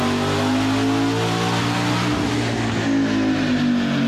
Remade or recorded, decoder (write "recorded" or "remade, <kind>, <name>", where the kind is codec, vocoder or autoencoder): recorded